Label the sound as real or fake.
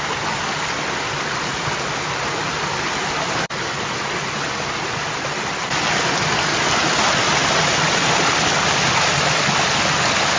real